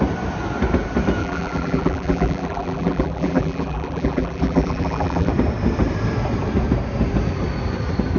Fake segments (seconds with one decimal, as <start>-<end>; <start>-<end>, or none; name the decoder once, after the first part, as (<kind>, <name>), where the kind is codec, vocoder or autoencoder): 1.2-5.3 (vocoder, BigVGAN v2)